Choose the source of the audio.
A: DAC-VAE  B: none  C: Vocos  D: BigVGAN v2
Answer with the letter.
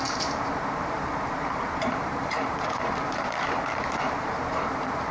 D